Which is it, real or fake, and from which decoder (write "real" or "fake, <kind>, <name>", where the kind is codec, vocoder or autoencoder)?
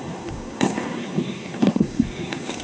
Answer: fake, codec, SNAC